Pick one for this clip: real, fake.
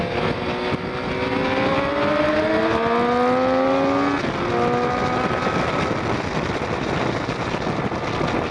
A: real